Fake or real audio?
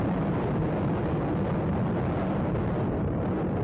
real